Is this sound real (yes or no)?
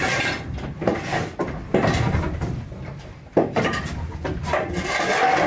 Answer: yes